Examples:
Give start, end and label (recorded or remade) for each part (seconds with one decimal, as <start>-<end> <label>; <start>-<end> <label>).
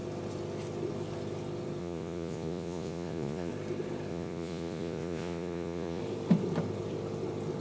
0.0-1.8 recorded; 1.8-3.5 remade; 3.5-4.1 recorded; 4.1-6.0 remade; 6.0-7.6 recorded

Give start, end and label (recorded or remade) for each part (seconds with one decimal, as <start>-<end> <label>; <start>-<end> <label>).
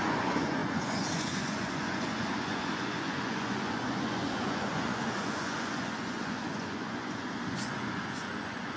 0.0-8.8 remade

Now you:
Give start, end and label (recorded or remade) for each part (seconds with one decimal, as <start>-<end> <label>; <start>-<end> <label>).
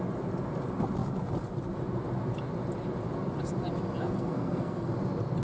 0.0-4.0 recorded; 4.0-4.9 remade; 4.9-5.4 recorded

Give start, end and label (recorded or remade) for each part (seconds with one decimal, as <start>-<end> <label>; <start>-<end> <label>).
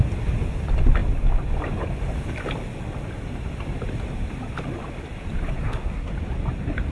0.0-5.6 recorded; 5.6-6.1 remade; 6.1-6.9 recorded